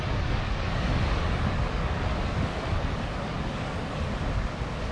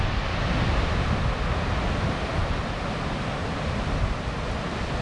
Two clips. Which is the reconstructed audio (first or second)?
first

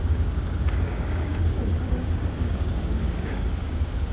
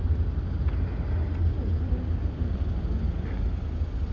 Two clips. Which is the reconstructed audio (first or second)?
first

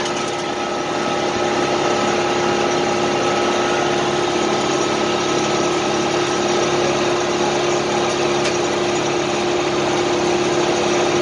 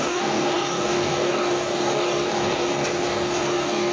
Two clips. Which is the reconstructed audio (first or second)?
second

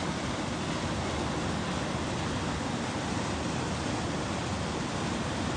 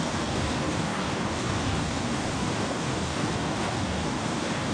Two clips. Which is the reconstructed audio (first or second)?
second